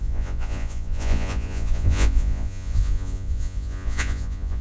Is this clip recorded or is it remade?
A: remade